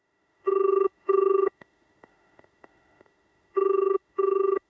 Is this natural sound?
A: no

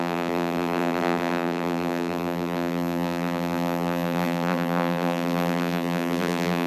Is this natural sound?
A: no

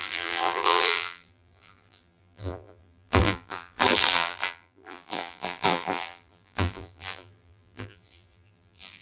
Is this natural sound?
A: no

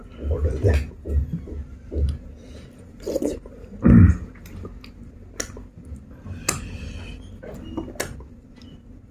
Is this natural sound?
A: yes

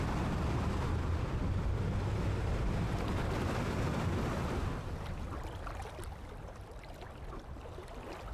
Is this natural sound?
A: yes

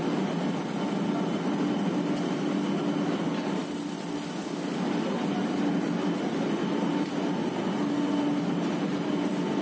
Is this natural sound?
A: yes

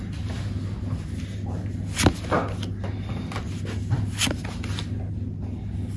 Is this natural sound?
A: yes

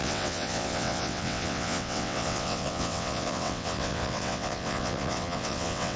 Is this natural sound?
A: no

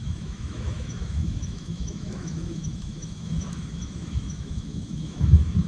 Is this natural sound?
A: no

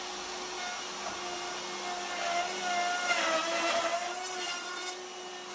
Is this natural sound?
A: yes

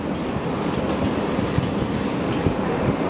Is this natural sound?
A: yes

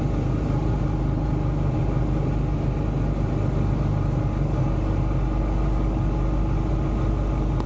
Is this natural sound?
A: yes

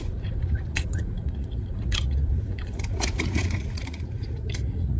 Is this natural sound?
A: no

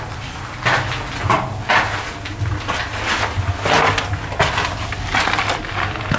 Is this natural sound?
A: yes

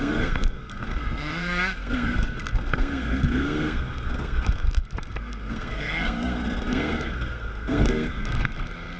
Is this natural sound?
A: no